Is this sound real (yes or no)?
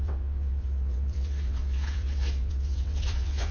no